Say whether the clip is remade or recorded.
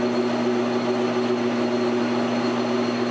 recorded